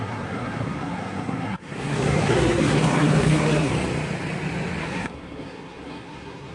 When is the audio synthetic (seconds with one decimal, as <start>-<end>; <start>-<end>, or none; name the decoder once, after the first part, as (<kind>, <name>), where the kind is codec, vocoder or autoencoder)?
0.0-3.7 (codec, SNAC); 4.8-6.5